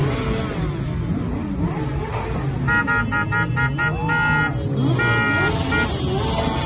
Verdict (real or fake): real